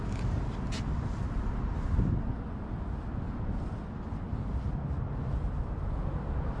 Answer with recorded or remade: recorded